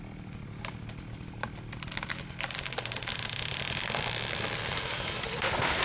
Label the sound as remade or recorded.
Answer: recorded